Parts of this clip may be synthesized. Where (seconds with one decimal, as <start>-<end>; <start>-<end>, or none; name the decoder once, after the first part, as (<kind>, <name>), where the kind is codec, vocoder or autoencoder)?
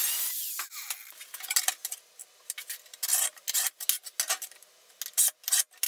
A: none